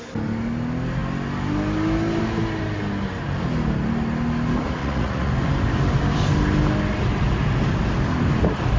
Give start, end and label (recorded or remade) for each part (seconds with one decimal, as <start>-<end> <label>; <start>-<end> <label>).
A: 0.0-4.8 recorded; 4.8-5.3 remade; 5.3-8.8 recorded